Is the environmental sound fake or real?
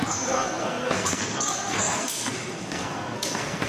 fake